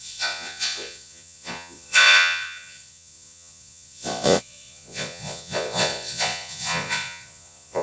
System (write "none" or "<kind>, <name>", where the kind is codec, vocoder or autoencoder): vocoder, Vocos